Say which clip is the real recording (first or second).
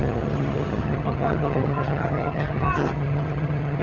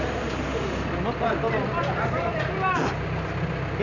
second